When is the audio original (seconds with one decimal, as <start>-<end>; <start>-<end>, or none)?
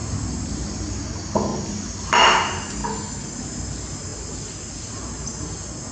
0.9-1.5; 2.1-4.1; 4.9-5.9